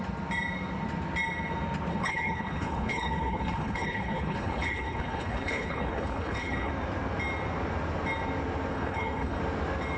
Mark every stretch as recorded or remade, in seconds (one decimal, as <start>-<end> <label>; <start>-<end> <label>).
0.0-1.9 recorded; 1.9-6.7 remade; 6.7-8.7 recorded; 8.7-9.4 remade; 9.4-10.0 recorded